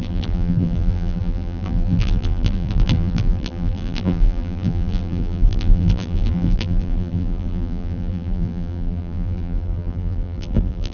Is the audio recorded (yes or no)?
no